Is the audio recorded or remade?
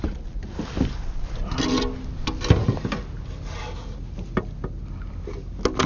recorded